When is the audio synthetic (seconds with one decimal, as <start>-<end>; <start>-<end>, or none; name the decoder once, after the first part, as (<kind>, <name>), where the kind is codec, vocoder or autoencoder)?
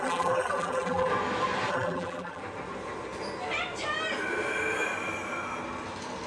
0.0-1.1 (vocoder, BigVGAN v2); 1.7-2.4